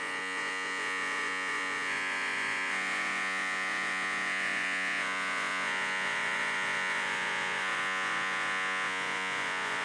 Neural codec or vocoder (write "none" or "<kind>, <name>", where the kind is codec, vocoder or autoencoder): vocoder, Vocos